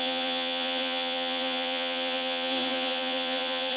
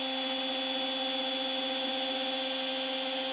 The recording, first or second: second